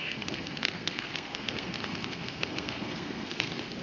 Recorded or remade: remade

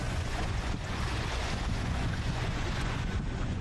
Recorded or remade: remade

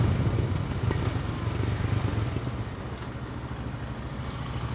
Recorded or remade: recorded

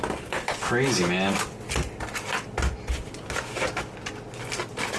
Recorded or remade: recorded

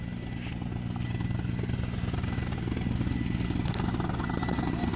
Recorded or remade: recorded